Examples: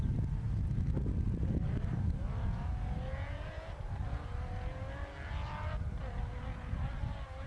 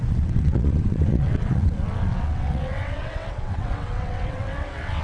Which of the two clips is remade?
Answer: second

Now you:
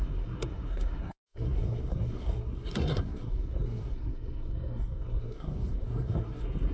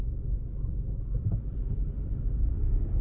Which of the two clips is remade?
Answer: first